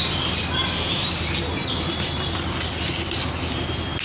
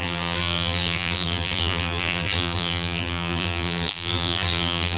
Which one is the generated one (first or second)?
second